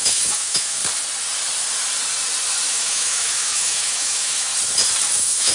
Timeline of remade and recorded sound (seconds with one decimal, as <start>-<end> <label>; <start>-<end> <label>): 0.0-0.8 remade; 0.8-2.7 recorded; 2.7-4.5 remade; 4.5-5.1 recorded; 5.1-5.5 remade